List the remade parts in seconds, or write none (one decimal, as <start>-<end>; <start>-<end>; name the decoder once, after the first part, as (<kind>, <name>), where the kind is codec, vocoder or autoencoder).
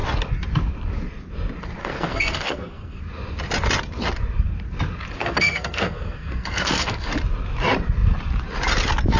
1.8-3.0 (codec, SNAC); 5.2-7.1